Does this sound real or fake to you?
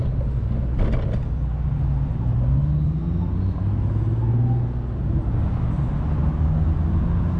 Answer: real